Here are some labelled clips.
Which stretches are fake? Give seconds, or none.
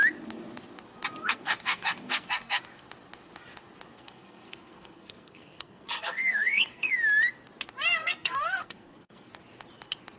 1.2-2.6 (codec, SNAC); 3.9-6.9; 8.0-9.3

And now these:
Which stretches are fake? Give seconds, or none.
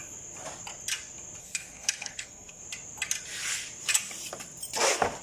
1.4-2.6 (codec, SNAC)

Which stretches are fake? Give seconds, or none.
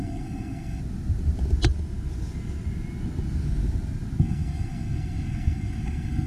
0.0-0.8 (codec, SNAC); 4.2-6.3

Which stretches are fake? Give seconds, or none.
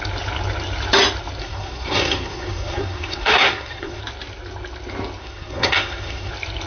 1.4-4.0 (codec, SNAC); 5.2-6.3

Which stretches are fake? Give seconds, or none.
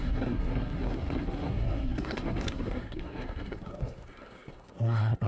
0.0-5.3 (codec, SNAC)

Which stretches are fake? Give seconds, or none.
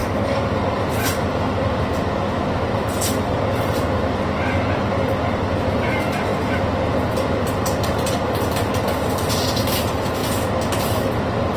none